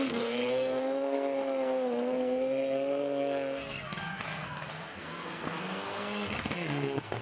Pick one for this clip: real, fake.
fake